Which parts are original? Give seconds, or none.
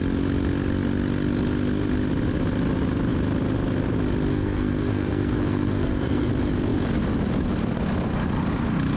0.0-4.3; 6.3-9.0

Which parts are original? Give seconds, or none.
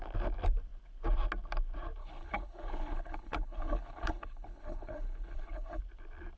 0.0-2.0; 5.8-6.4